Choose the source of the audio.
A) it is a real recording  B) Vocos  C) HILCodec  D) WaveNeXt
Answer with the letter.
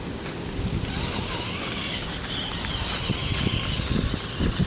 A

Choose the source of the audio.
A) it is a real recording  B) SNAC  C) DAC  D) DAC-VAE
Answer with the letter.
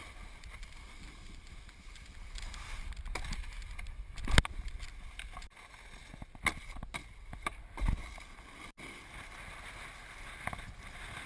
A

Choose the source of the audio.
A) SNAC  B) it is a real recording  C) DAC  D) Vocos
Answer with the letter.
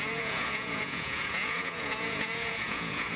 D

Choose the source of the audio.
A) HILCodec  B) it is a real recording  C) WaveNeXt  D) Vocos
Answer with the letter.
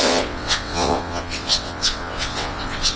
C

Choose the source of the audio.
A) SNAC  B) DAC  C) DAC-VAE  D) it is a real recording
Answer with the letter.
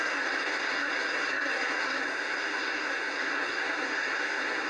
A